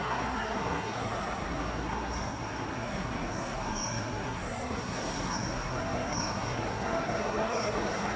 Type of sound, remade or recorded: remade